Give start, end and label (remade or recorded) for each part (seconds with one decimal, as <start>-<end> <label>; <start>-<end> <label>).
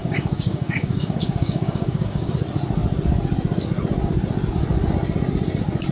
0.0-2.3 remade; 2.3-5.9 recorded